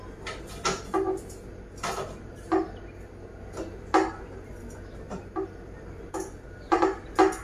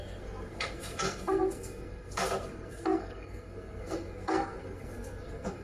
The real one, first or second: first